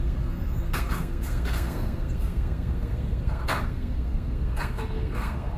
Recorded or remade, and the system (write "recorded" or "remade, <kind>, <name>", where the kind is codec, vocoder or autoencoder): remade, codec, SNAC